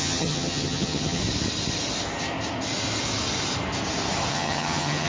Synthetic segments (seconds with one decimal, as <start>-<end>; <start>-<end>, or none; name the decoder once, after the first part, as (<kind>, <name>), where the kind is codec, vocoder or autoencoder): 0.0-1.2 (vocoder, HiFi-GAN); 4.3-5.1